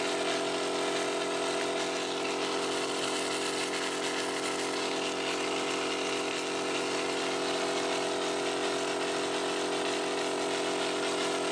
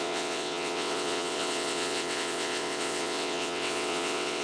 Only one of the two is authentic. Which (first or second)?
first